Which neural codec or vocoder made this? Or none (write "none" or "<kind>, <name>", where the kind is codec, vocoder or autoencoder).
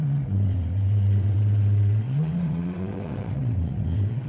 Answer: vocoder, WaveNeXt